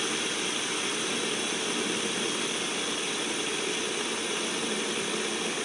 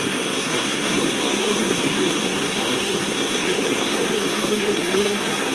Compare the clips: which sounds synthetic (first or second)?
second